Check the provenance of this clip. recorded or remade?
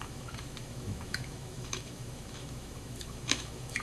remade